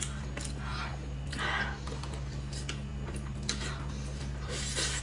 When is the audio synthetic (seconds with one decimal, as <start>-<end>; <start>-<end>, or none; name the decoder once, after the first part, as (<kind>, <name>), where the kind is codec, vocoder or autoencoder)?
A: none